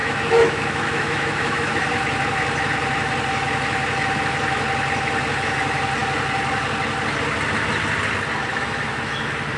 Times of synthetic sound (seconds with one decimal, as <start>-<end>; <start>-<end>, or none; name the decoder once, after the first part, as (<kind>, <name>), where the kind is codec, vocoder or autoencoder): 0.0-1.8 (autoencoder, DAC-VAE); 8.5-9.2